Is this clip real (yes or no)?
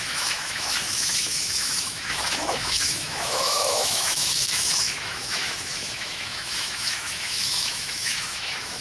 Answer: no